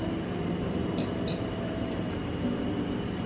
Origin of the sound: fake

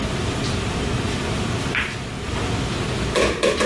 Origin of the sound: fake